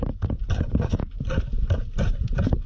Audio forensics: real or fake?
fake